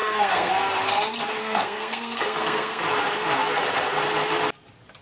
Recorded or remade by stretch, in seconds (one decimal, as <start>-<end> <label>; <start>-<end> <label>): 0.0-0.5 remade; 0.5-1.4 recorded; 1.4-2.8 remade; 2.8-5.0 recorded